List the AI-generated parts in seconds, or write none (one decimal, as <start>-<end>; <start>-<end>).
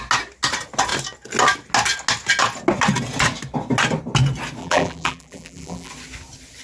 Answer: 4.6-5.9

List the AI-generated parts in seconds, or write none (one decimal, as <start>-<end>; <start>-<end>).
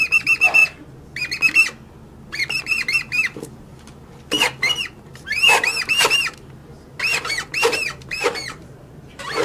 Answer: 0.0-0.6; 2.6-3.7; 4.9-6.6; 7.3-9.4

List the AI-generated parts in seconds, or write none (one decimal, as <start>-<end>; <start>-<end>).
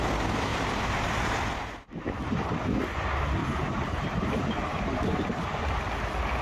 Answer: 0.5-1.4; 3.4-5.2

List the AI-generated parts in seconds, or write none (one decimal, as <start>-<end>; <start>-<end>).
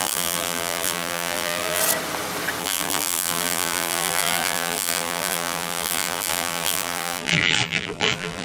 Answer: 0.0-1.8; 2.6-8.4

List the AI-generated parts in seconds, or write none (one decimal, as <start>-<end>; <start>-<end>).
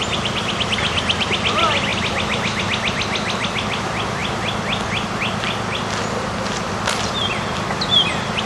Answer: none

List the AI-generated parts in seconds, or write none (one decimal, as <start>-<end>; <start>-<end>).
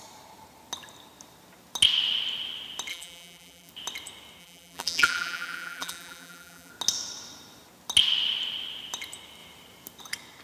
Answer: 2.9-3.7; 4.4-6.7